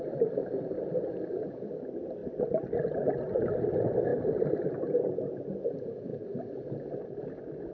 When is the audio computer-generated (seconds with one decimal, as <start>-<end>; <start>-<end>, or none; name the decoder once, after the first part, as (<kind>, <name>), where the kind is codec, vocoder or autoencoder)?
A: none